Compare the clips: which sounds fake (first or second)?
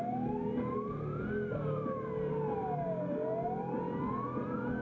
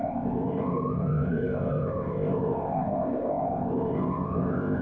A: second